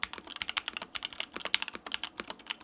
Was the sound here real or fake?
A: real